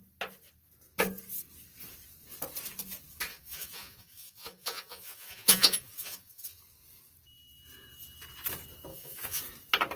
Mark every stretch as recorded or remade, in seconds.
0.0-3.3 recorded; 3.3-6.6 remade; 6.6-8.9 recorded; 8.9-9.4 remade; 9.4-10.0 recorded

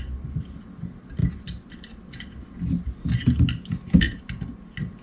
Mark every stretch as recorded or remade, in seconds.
0.0-5.0 recorded

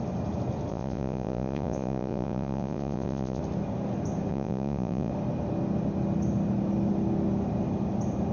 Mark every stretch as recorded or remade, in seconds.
0.0-0.7 recorded; 0.7-3.4 remade; 3.4-4.3 recorded; 4.3-5.1 remade; 5.1-8.3 recorded

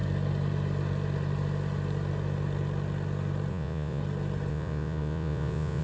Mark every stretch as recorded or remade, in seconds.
0.0-3.5 recorded; 3.5-4.0 remade; 4.0-4.5 recorded; 4.5-5.8 remade

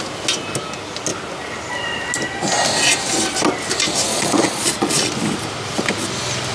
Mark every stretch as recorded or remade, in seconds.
0.0-4.1 recorded; 4.1-5.1 remade; 5.1-6.5 recorded

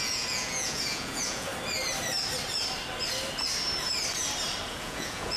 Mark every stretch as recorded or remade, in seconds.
0.0-1.5 remade; 1.5-4.7 recorded; 4.7-5.4 remade

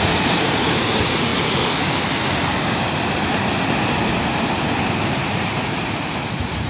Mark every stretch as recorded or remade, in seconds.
0.0-1.3 remade; 1.3-5.1 recorded; 5.1-6.7 remade

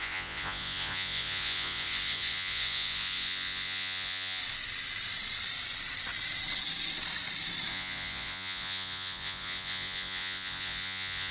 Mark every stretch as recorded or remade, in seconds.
0.0-4.4 remade; 4.4-7.7 recorded; 7.7-11.3 remade